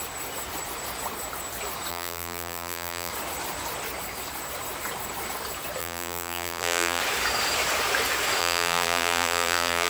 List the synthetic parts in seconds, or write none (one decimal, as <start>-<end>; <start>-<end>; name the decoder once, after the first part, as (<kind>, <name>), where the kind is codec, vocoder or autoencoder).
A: 1.9-3.1 (vocoder, BigVGAN v2); 5.8-7.0; 8.4-9.9